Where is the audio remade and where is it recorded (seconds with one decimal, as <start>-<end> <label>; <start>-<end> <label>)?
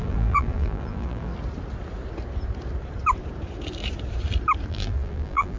0.0-1.3 remade; 1.3-4.7 recorded; 4.7-5.6 remade